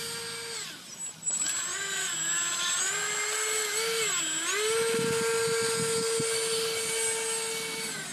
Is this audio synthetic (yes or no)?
no